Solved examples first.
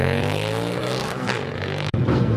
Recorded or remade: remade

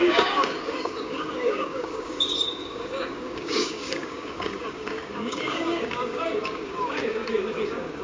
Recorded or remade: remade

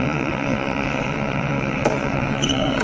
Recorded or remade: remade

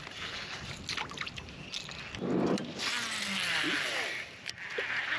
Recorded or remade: recorded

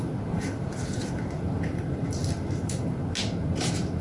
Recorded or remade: recorded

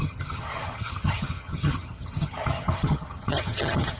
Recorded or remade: remade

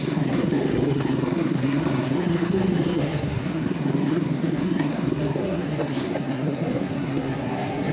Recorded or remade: remade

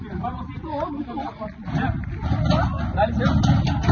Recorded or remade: recorded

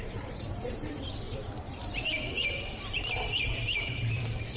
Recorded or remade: remade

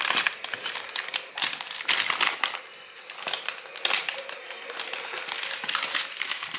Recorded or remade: recorded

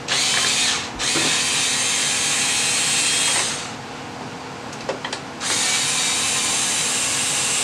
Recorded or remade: recorded